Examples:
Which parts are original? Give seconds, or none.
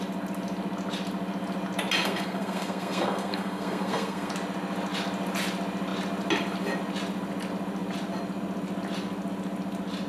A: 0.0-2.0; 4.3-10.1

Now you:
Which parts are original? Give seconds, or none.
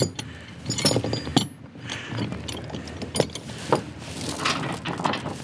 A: 0.0-5.4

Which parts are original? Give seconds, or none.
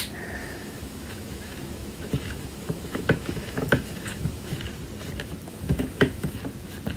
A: 0.0-0.4; 4.6-5.5; 6.4-7.0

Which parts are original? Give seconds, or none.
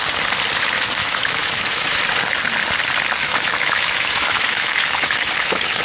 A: 0.0-1.0; 2.0-3.2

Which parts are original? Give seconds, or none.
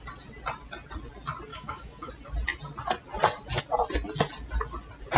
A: 0.0-1.5; 2.1-5.2